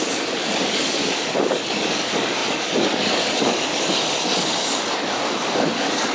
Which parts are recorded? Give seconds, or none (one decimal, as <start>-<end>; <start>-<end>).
none

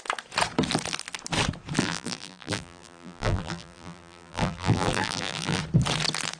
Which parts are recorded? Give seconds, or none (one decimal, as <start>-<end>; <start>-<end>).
0.0-1.8; 5.6-6.4

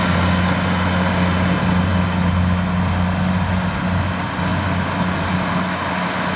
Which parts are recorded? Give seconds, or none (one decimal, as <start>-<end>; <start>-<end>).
0.0-6.4

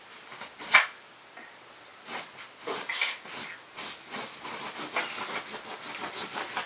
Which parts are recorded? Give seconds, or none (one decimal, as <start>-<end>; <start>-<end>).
0.0-6.7

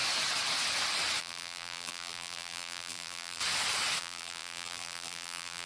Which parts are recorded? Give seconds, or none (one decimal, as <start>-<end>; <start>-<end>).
0.0-1.2; 3.4-4.0